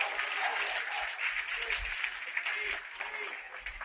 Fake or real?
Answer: real